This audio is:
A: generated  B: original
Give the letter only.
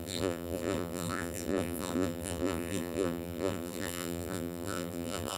A